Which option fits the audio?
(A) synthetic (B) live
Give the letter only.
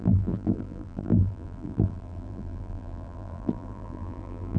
A